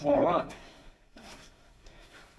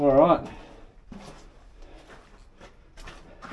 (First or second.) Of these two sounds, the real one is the second